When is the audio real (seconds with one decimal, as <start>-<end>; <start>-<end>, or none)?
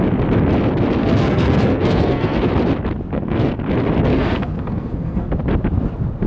0.0-1.0; 2.5-3.1; 3.6-4.1; 5.3-6.3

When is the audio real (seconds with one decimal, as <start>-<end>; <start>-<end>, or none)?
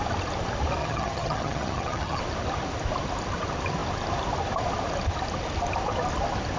0.0-0.8; 2.2-6.6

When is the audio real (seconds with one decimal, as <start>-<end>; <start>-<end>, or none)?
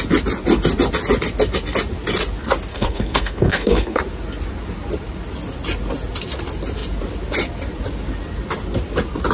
0.0-2.7; 4.0-9.3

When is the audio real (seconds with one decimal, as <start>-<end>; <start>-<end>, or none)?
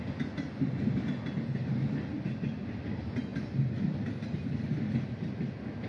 0.0-5.9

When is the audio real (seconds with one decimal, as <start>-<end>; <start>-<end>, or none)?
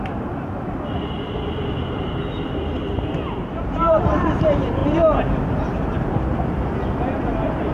4.8-7.0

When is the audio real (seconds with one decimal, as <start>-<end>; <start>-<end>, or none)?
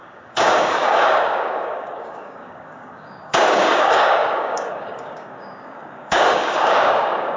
none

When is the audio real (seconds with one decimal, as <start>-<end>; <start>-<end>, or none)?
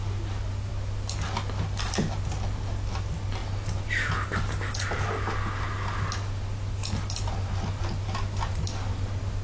0.0-9.4